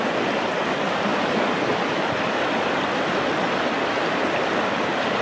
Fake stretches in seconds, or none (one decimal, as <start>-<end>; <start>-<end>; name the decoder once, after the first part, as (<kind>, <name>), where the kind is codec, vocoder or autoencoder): none